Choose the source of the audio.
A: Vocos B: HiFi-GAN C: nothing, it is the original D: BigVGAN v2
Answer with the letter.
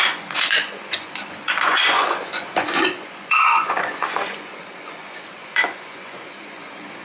A